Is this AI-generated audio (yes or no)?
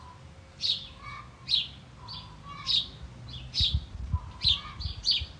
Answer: no